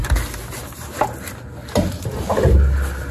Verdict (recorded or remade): recorded